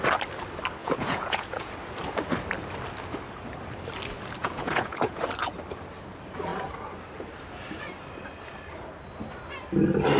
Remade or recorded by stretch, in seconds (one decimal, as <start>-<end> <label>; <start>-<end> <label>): 0.0-0.8 recorded; 0.8-1.7 remade; 1.7-4.4 recorded; 4.4-5.2 remade; 5.2-10.2 recorded